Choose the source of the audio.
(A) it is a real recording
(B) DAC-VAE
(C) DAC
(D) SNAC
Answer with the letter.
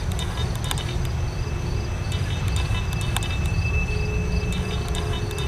A